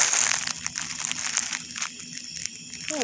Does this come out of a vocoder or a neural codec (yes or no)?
no